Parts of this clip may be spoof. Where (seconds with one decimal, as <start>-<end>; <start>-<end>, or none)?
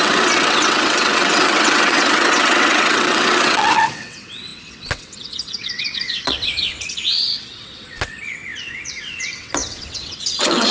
0.0-10.7